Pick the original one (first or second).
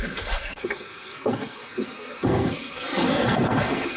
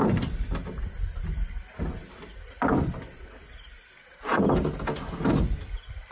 second